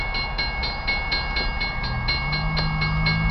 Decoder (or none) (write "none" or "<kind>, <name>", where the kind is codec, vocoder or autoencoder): none